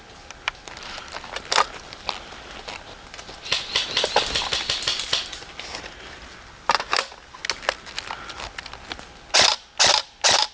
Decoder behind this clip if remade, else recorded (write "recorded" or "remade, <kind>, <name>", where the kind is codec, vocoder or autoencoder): recorded